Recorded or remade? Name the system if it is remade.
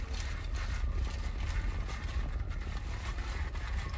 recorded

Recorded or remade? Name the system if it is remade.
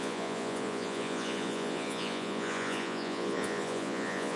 remade, vocoder, Vocos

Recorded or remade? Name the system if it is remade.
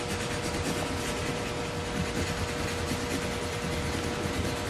recorded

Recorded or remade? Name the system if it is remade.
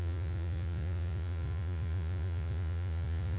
remade, vocoder, Vocos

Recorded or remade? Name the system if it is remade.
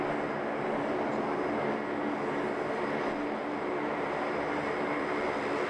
recorded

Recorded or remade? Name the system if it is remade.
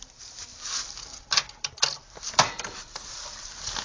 recorded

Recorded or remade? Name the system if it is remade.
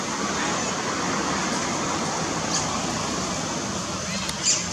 recorded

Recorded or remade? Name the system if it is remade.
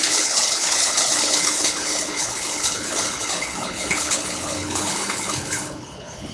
remade, codec, HILCodec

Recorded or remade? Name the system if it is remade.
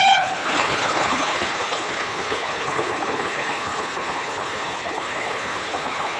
remade, codec, HILCodec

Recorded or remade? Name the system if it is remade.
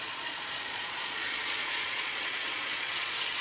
remade, vocoder, Vocos